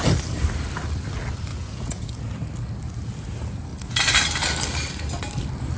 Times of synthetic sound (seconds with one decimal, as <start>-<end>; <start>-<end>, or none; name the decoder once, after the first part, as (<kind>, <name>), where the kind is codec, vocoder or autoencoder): 1.5-2.2 (vocoder, Vocos)